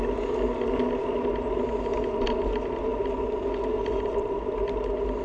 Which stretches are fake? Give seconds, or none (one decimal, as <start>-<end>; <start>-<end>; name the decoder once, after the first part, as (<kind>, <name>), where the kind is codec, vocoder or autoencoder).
none